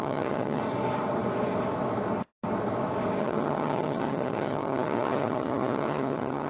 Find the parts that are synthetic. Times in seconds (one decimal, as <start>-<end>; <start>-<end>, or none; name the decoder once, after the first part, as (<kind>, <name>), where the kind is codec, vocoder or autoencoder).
0.0-0.6 (vocoder, HiFi-GAN); 3.2-6.5